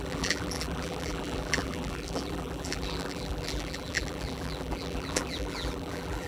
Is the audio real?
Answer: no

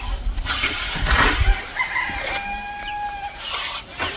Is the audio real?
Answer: yes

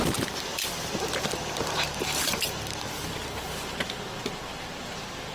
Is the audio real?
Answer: no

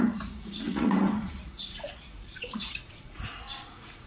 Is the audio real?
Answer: no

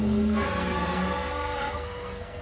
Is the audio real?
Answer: no